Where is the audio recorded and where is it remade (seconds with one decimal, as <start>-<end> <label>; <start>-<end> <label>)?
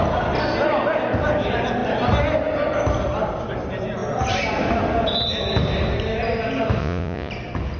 0.0-6.8 recorded; 6.8-7.3 remade; 7.3-7.8 recorded